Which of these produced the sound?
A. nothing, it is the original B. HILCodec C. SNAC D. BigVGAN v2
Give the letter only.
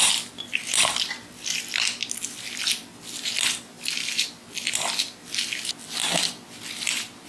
A